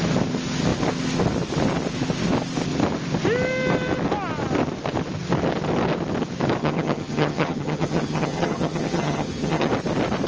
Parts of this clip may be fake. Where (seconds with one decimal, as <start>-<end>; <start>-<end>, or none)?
6.6-9.7